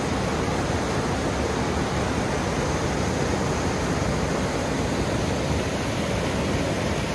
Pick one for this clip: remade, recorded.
recorded